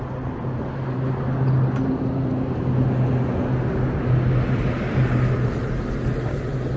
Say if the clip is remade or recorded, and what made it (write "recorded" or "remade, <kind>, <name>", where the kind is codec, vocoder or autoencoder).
recorded